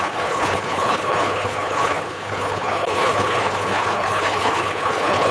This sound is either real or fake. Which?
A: fake